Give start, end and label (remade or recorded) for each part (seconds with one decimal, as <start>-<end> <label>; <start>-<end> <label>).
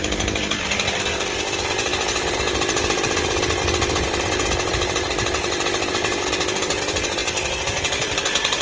0.0-8.6 recorded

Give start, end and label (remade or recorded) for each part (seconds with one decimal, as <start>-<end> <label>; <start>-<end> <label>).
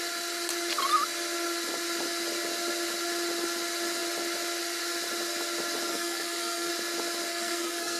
0.0-5.9 recorded; 5.9-6.7 remade; 6.7-7.3 recorded; 7.3-8.0 remade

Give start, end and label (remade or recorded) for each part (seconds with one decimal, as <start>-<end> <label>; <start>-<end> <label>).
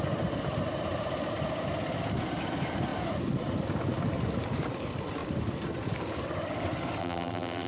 0.0-7.0 recorded; 7.0-7.7 remade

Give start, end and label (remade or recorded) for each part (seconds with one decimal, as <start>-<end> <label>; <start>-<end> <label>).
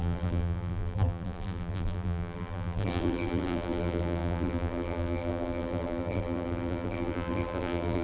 0.0-8.0 remade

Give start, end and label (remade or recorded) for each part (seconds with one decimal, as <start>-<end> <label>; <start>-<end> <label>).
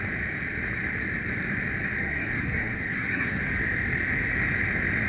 0.0-2.0 recorded; 2.0-3.4 remade; 3.4-5.1 recorded